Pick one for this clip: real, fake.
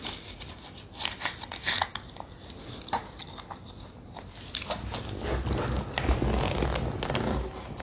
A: real